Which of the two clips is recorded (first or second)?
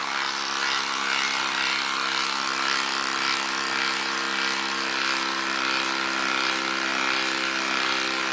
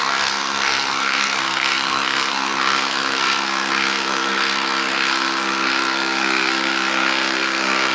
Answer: first